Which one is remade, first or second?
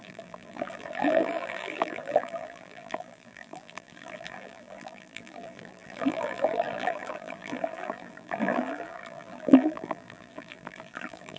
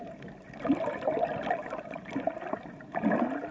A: first